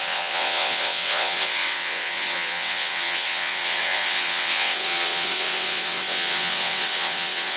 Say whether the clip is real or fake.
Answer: fake